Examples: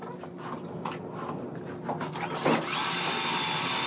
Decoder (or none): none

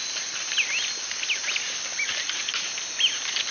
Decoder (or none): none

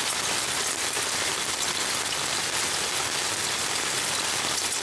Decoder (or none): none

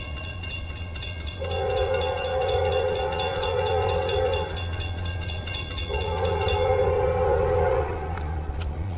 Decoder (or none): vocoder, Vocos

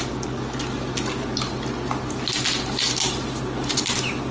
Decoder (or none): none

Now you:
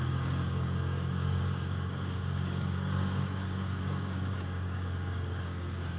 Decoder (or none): codec, DAC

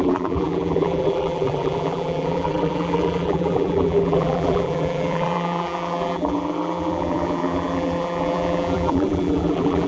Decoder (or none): vocoder, BigVGAN v2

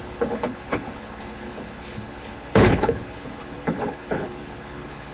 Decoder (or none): codec, HILCodec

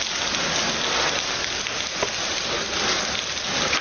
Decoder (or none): none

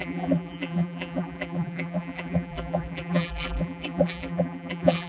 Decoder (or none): vocoder, BigVGAN v2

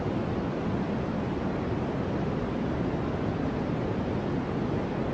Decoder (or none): none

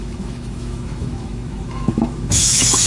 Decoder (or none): autoencoder, DAC-VAE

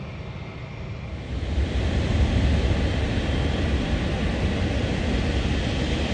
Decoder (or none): none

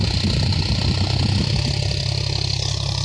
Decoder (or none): none